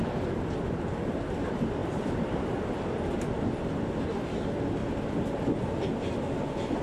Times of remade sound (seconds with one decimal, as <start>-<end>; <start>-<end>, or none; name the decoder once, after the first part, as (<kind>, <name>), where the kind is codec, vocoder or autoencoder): 1.8-2.6 (vocoder, BigVGAN v2); 4.8-5.7